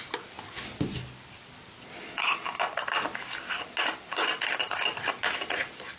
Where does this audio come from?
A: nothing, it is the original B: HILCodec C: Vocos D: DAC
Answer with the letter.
A